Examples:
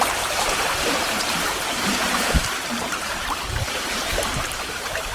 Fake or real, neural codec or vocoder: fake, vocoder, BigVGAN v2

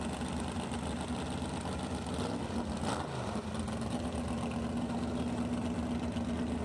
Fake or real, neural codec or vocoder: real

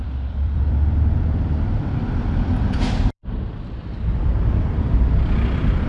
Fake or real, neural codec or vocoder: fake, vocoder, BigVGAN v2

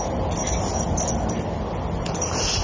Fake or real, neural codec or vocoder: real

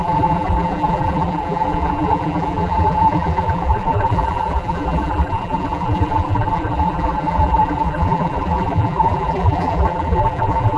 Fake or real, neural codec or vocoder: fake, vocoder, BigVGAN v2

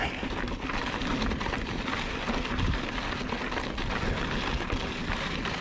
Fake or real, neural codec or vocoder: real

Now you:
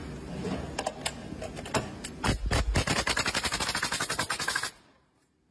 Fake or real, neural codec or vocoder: real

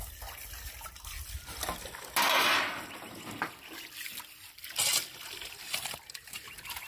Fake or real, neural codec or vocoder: real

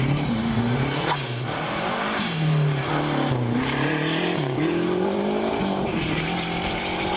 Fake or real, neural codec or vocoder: fake, vocoder, BigVGAN v2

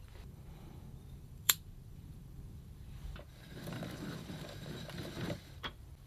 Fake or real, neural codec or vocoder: fake, vocoder, BigVGAN v2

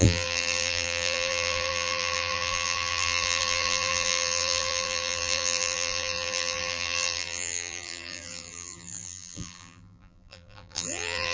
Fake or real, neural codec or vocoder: fake, vocoder, BigVGAN v2